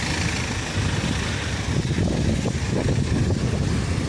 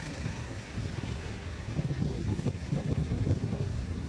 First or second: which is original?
first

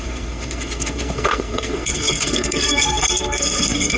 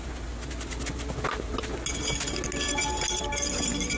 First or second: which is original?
second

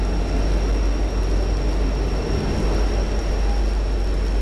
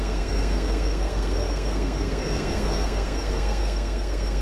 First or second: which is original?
first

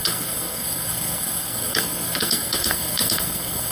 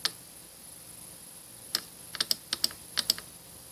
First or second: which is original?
second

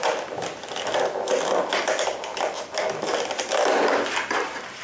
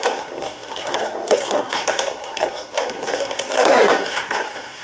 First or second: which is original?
first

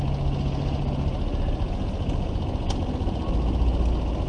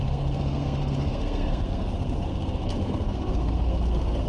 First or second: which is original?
first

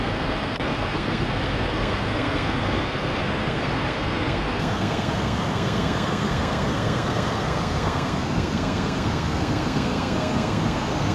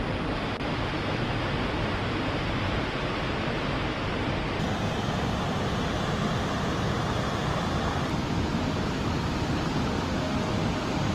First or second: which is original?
second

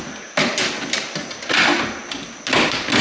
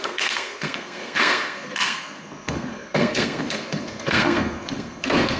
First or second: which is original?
first